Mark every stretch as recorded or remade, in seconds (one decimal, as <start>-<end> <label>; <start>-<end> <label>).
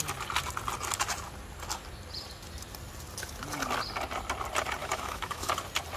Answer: 0.0-4.8 recorded; 4.8-5.5 remade; 5.5-6.0 recorded